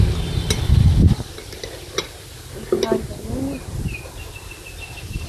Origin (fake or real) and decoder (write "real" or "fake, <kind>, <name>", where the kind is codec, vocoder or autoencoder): real